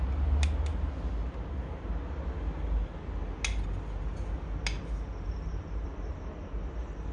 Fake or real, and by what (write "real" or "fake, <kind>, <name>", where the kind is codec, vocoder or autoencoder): real